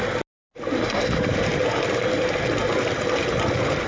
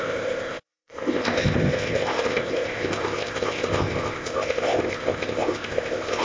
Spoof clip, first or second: second